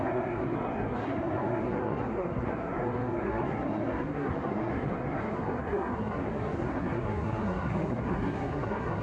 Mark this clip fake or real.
fake